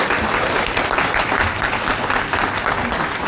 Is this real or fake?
real